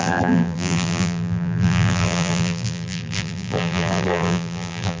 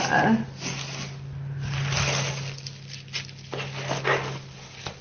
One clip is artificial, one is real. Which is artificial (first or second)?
first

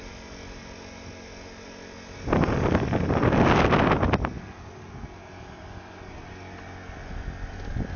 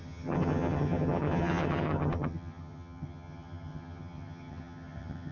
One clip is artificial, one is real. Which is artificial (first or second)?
second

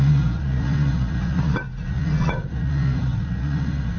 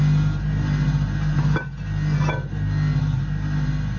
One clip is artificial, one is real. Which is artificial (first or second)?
first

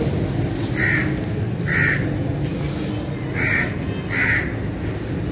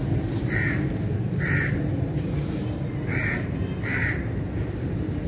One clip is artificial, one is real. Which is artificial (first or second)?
second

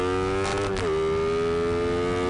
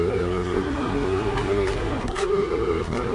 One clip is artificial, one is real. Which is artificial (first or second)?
second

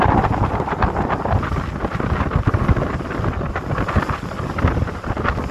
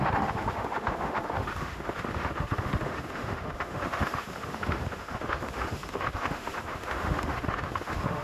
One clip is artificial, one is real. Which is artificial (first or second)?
second